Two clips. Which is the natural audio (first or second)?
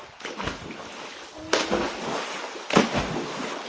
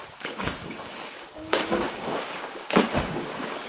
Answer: first